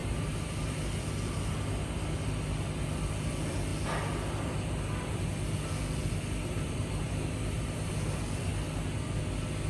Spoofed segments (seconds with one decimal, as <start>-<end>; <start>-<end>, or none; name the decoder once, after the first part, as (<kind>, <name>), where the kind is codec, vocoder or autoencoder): 0.0-0.9 (vocoder, BigVGAN v2); 6.4-7.9